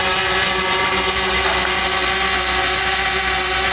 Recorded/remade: recorded